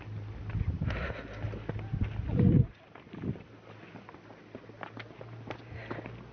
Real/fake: real